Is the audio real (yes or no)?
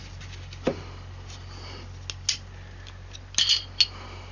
yes